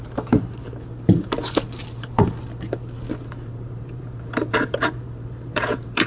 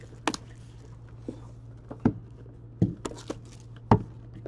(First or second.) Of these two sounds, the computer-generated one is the first